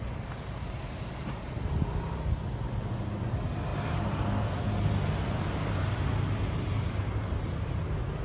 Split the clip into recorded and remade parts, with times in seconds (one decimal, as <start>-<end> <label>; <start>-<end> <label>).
0.0-0.8 remade; 0.8-3.7 recorded; 3.7-8.2 remade